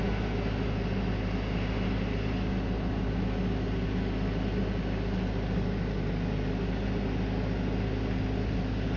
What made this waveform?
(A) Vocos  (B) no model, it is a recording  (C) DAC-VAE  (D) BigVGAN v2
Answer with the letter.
B